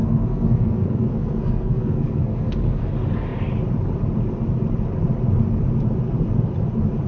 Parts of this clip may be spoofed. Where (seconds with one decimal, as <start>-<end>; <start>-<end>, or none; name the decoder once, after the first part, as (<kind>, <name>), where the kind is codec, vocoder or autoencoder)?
0.0-2.9 (codec, SNAC)

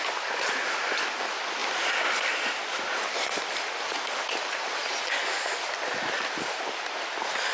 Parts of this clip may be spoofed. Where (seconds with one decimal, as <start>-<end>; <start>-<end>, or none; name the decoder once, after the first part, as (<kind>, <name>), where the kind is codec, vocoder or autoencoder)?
none

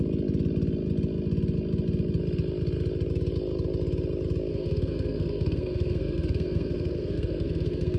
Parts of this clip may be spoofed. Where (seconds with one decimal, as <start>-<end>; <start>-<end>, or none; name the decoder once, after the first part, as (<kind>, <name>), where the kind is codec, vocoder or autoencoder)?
4.5-8.0 (codec, SNAC)

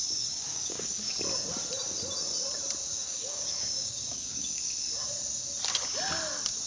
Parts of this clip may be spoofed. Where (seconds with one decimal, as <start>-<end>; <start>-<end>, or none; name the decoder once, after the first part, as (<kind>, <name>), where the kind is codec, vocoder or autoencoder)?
0.0-1.2 (codec, DAC); 2.9-4.8

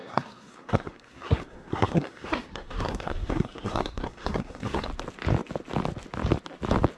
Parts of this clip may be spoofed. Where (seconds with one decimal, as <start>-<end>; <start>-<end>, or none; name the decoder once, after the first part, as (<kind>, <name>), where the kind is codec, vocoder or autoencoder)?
0.0-4.9 (codec, SNAC)

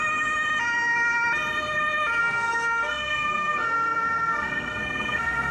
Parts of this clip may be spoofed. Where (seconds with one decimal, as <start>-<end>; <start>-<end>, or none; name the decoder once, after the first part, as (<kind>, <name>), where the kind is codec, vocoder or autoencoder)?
2.2-5.5 (codec, SNAC)